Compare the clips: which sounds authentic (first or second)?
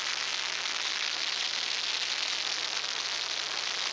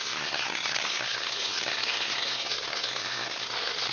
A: first